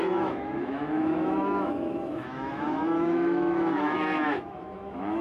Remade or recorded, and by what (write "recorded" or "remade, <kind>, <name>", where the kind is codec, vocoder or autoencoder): remade, autoencoder, DAC-VAE